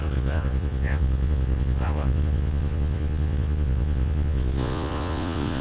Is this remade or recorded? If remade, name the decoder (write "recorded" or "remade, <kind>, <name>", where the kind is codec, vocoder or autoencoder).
remade, vocoder, Vocos